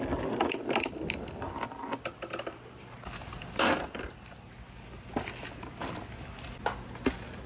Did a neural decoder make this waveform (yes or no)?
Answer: no